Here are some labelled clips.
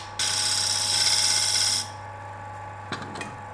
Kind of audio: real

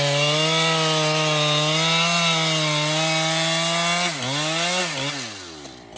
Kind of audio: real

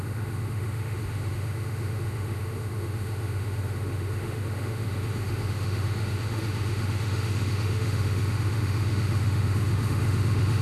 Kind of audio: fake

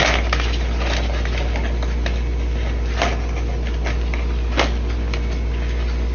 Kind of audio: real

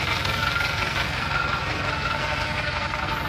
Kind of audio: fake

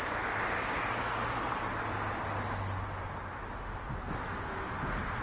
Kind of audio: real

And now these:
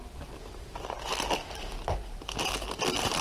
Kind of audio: real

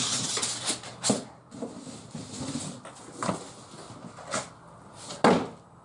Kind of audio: real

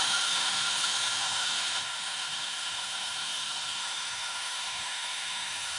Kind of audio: fake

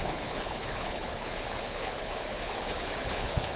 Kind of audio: fake